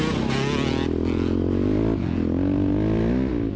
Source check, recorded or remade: recorded